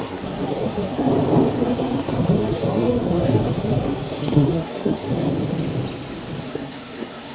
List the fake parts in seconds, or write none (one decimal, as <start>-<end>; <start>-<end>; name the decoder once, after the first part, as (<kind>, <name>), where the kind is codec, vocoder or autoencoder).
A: 0.0-1.1 (codec, SNAC); 1.6-5.3; 6.4-7.3